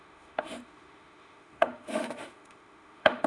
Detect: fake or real fake